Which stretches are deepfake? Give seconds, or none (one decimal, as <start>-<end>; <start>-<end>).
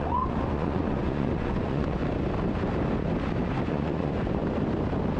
0.0-2.0; 3.7-4.4